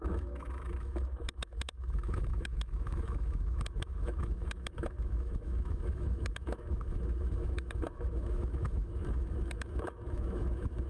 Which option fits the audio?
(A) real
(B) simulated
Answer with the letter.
B